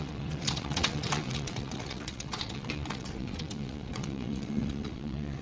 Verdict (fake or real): fake